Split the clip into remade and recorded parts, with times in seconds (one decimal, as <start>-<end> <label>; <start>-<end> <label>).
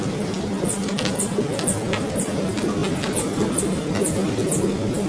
0.0-5.1 recorded